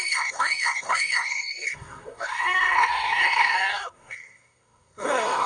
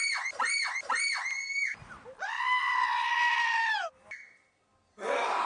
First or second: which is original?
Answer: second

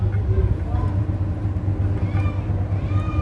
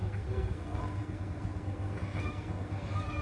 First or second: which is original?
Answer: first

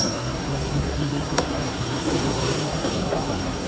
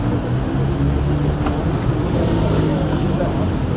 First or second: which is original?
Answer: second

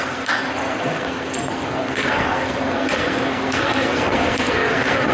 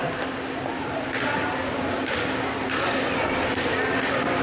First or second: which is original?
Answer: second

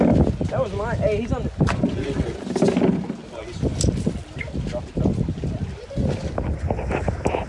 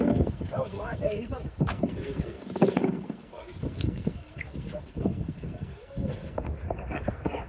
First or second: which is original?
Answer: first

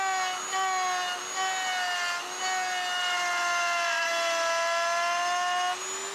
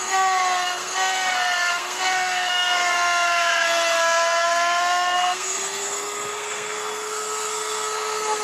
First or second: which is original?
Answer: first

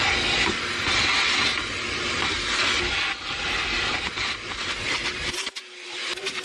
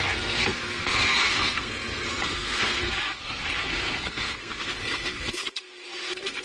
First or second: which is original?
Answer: first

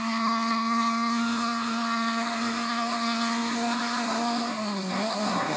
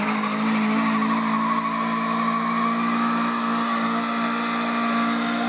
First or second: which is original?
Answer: second